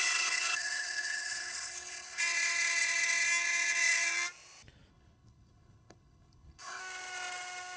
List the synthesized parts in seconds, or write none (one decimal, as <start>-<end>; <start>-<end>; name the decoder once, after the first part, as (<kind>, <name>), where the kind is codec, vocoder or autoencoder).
0.0-2.2 (codec, HILCodec); 4.9-6.8